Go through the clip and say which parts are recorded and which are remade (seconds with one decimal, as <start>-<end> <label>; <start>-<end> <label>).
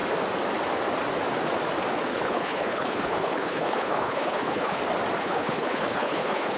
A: 0.0-2.1 recorded; 2.1-4.8 remade; 4.8-5.2 recorded; 5.2-6.6 remade